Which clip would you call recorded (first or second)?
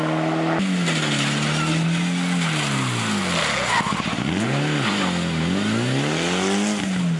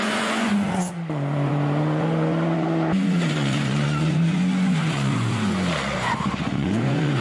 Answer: first